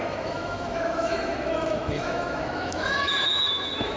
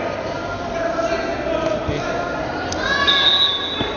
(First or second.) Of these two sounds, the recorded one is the second